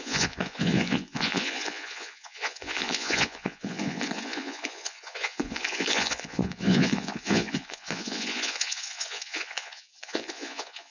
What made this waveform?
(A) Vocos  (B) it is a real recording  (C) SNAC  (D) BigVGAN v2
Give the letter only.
A